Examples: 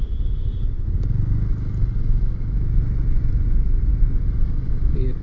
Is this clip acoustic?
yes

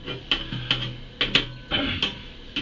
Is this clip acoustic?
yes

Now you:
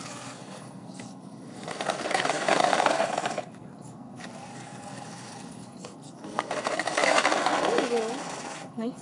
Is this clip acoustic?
no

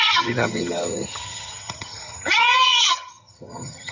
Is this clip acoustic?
no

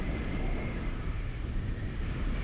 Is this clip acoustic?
yes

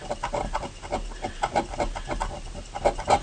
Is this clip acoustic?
yes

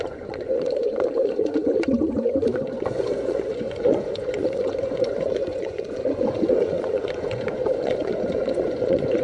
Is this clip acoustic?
no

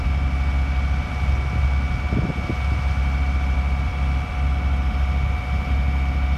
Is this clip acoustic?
yes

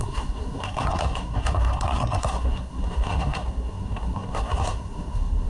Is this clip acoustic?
no